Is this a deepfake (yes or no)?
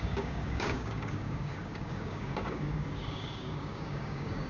yes